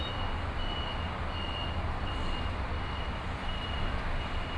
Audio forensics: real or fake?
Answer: real